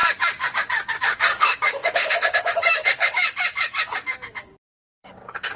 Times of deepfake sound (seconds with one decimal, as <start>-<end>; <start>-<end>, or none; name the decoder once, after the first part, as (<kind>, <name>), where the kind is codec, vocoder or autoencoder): 0.0-5.6 (codec, DAC)